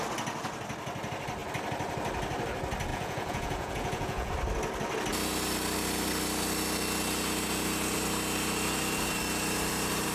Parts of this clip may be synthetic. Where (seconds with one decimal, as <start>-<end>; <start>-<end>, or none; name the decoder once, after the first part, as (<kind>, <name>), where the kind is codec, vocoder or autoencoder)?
2.9-4.3 (vocoder, Vocos)